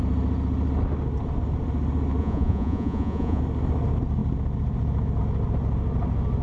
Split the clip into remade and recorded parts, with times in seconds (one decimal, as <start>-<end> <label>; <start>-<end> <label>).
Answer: 0.0-2.2 recorded; 2.2-3.4 remade; 3.4-6.4 recorded